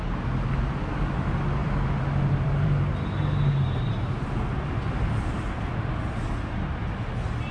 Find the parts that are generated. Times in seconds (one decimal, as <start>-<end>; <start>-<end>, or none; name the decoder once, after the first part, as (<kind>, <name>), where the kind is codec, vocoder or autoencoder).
1.6-2.8 (vocoder, BigVGAN v2)